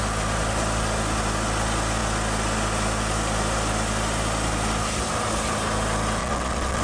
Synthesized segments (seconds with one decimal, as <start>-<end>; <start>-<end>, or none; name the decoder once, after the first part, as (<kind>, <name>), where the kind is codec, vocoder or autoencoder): 6.2-6.8 (vocoder, Vocos)